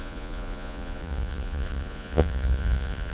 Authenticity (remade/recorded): remade